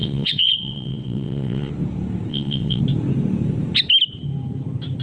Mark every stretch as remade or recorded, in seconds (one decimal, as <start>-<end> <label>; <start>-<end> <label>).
0.0-1.7 remade; 1.7-2.3 recorded; 2.3-2.8 remade; 2.8-5.0 recorded